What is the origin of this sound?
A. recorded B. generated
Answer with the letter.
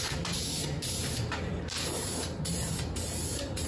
B